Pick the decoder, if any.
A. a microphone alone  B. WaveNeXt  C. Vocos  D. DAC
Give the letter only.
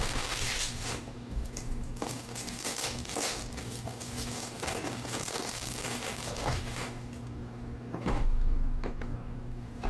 D